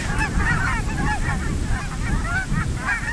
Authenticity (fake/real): real